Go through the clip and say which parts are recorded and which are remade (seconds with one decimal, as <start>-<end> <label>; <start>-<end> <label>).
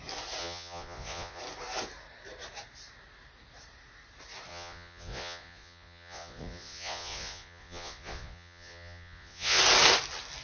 0.0-0.4 recorded; 0.4-1.4 remade; 1.4-4.5 recorded; 4.5-9.6 remade; 9.6-10.4 recorded